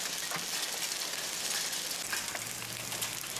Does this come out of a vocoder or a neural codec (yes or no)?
no